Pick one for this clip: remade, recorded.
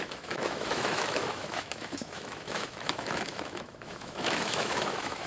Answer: remade